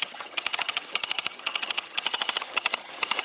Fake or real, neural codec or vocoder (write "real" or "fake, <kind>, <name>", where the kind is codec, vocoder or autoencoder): fake, vocoder, HiFi-GAN